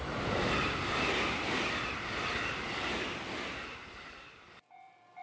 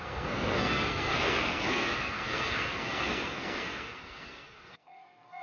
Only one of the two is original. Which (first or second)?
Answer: first